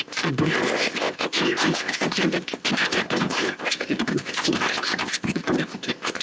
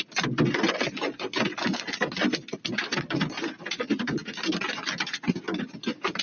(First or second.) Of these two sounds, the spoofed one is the first